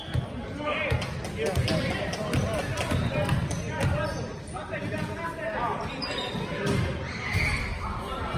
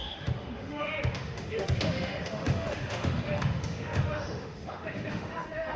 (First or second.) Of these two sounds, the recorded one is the first